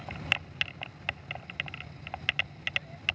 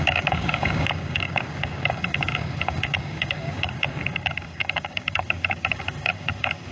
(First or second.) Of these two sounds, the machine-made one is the second